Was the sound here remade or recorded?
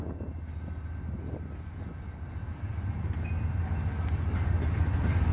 recorded